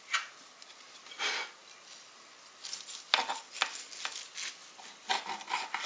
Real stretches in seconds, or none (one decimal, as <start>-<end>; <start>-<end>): 0.0-5.9